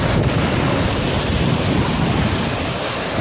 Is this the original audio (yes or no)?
yes